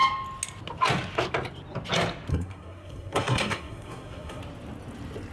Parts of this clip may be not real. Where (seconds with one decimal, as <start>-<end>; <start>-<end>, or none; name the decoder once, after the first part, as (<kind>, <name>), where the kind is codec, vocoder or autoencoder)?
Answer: 2.3-4.4 (codec, SNAC)